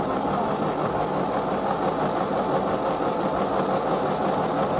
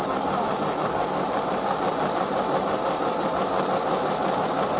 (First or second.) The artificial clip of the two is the second